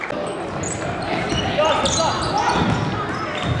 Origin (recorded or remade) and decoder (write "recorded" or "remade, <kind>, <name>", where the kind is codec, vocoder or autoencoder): recorded